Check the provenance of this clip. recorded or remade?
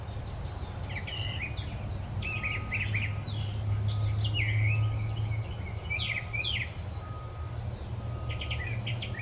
recorded